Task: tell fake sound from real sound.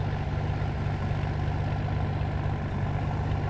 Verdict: real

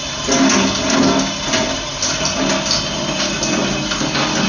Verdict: real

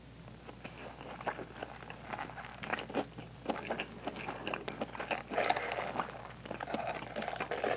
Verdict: real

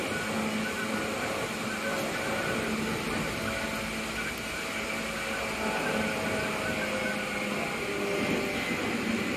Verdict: real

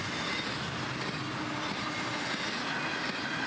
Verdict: real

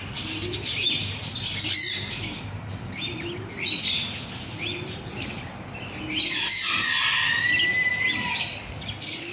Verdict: real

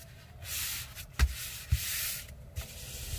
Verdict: fake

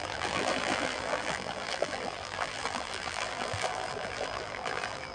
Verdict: fake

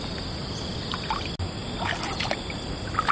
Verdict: real